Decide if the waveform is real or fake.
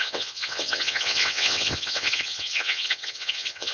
fake